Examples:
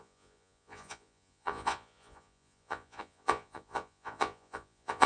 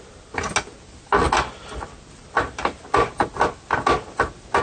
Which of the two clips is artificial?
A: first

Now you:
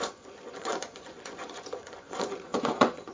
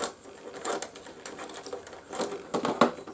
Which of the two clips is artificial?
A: first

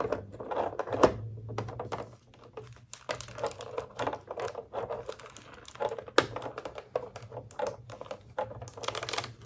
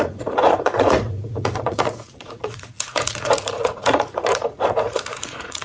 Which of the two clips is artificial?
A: second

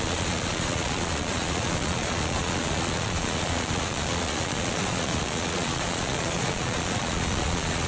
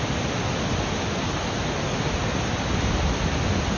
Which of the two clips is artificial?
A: first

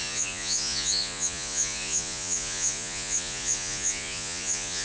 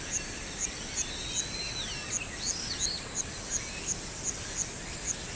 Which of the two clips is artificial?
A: first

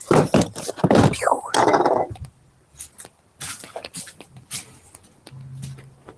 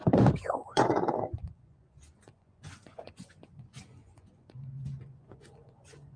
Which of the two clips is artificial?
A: second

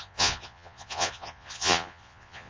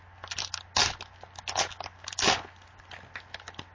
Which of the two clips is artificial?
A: first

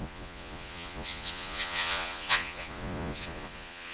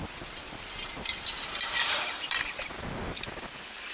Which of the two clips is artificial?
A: first